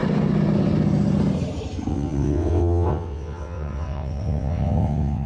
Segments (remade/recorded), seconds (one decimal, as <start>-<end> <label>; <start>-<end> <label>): 0.0-1.9 recorded; 1.9-5.3 remade